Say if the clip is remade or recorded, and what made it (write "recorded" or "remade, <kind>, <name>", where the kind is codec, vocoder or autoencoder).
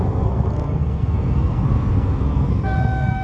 remade, codec, SNAC